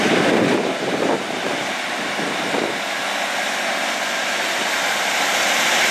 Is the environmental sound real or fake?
real